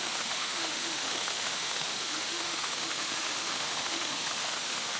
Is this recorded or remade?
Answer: remade